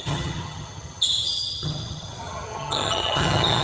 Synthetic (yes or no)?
yes